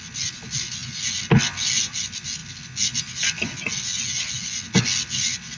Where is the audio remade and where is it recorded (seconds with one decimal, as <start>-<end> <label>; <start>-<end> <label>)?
0.0-5.6 recorded